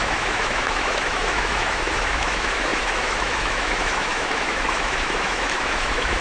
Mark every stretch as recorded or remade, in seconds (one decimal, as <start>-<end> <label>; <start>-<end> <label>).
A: 0.0-6.2 remade